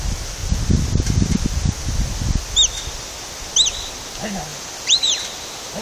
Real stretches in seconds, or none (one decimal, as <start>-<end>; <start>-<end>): 0.0-4.5; 5.2-5.8